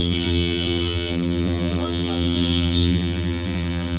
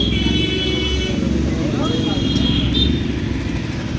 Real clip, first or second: second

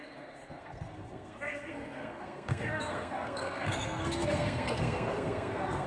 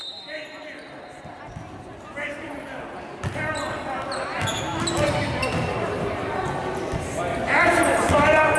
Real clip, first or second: second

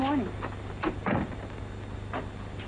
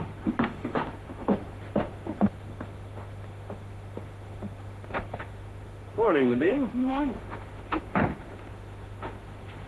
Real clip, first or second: first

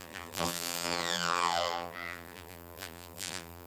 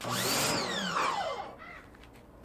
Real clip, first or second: second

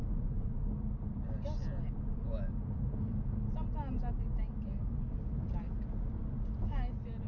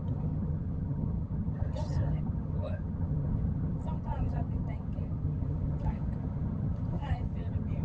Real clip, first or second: first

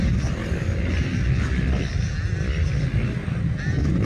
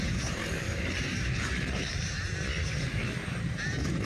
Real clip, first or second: first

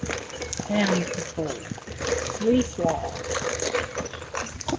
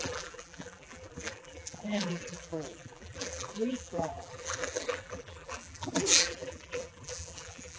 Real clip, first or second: first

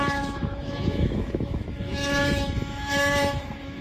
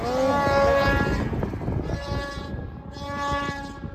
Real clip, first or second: second